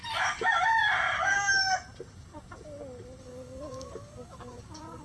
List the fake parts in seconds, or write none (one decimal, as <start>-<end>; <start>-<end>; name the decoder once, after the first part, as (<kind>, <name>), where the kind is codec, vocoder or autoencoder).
1.2-1.6 (codec, DAC); 3.2-5.0